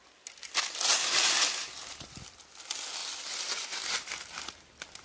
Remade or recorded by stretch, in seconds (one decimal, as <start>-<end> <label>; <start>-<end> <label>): 0.0-5.0 recorded